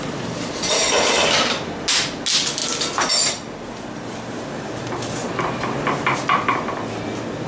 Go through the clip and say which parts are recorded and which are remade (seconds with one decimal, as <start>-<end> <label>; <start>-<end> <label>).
0.0-7.5 recorded